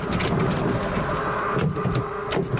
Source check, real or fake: real